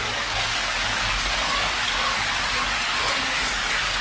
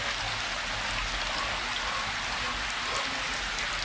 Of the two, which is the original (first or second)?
second